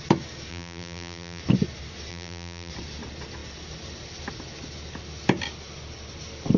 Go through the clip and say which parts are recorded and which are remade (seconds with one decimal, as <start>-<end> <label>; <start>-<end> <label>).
0.0-0.5 recorded; 0.5-1.4 remade; 1.4-2.1 recorded; 2.1-2.7 remade; 2.7-6.6 recorded